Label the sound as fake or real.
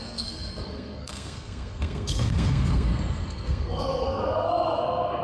fake